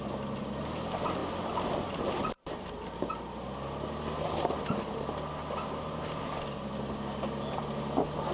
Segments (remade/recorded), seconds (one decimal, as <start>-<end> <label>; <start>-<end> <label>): 0.0-8.3 recorded